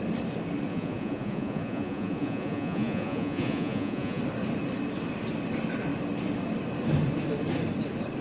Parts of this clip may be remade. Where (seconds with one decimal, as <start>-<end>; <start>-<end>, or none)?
0.7-4.2